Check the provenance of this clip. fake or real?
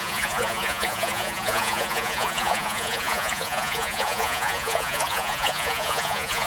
fake